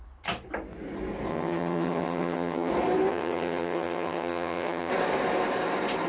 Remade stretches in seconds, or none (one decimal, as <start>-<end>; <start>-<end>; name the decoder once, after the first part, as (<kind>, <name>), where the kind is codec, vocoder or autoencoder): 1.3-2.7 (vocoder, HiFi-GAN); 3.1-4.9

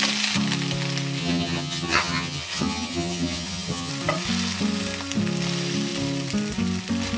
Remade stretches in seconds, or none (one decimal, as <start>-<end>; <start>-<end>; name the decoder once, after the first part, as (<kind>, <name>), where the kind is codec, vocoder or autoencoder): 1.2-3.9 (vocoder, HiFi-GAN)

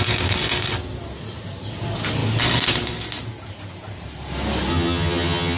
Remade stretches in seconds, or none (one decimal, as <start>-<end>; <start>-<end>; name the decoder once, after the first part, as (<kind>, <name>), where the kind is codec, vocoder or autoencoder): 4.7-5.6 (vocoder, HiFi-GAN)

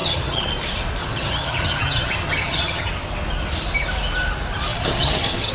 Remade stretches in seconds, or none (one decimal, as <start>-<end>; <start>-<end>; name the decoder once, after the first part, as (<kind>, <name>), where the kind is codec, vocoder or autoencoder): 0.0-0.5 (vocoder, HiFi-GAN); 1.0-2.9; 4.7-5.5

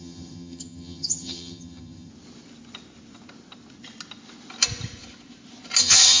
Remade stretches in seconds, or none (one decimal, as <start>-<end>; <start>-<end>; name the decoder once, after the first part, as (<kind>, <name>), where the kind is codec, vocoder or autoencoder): 0.0-2.1 (vocoder, HiFi-GAN); 5.8-6.2

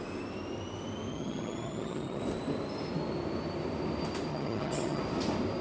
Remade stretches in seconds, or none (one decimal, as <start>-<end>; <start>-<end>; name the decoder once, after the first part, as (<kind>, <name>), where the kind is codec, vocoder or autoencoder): 1.1-2.2 (vocoder, HiFi-GAN); 4.3-5.0

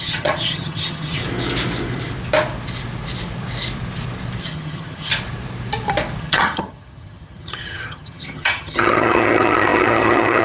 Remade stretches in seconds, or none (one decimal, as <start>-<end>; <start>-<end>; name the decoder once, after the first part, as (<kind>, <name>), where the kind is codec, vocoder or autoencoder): 0.0-1.2 (vocoder, HiFi-GAN); 4.4-5.1; 6.2-10.4